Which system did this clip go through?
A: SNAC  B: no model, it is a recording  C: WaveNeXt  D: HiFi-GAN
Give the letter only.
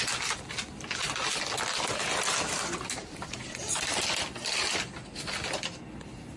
B